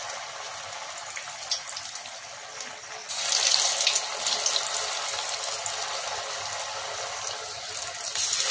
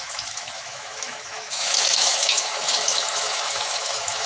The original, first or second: first